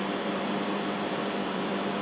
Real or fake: fake